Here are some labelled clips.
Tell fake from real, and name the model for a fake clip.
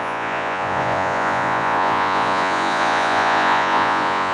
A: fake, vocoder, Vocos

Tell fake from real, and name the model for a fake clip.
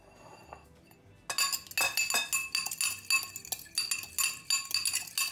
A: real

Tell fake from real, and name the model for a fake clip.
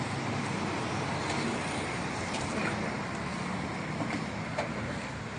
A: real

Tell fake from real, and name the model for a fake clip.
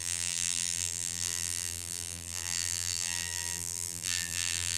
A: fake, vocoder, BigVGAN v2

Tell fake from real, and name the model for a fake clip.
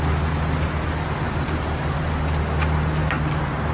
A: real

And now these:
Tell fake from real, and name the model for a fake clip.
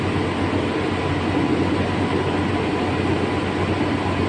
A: real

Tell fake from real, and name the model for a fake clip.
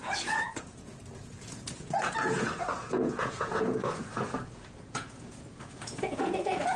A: fake, vocoder, Vocos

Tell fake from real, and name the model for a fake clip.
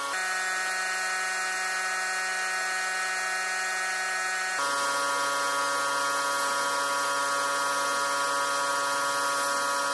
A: real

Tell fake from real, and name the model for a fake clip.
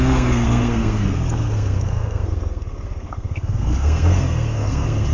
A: fake, codec, SNAC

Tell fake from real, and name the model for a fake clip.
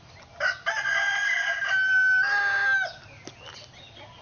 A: real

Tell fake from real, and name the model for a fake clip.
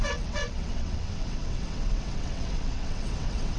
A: fake, vocoder, WaveNeXt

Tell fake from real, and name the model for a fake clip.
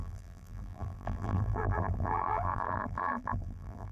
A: fake, vocoder, BigVGAN v2